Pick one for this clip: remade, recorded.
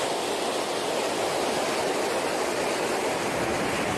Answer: recorded